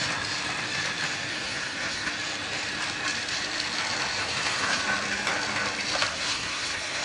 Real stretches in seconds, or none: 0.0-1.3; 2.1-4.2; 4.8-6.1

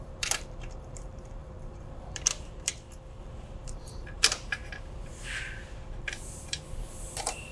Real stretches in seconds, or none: 2.7-3.2

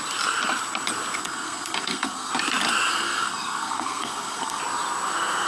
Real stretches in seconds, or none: 0.0-1.2; 2.3-2.9; 4.6-5.5

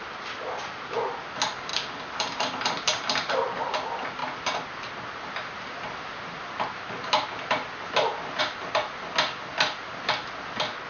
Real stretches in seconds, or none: 0.0-10.9